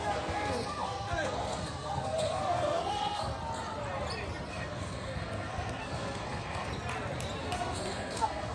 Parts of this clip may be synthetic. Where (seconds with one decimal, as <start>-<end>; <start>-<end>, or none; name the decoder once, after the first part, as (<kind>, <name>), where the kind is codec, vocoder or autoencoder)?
0.0-3.3 (codec, SNAC); 4.5-6.7; 7.4-8.5